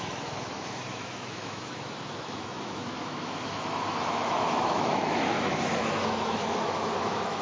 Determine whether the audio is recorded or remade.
remade